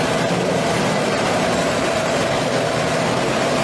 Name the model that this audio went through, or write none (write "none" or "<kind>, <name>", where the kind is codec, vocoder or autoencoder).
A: none